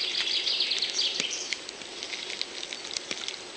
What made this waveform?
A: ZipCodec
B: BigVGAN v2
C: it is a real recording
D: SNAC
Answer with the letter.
C